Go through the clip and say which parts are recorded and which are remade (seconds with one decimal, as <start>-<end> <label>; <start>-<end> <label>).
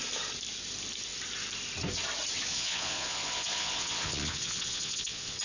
0.0-2.5 recorded; 2.5-5.4 remade